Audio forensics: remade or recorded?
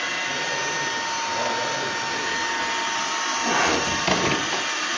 recorded